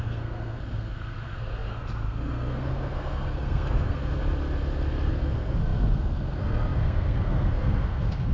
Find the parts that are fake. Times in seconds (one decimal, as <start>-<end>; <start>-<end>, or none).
0.0-4.2; 5.1-8.3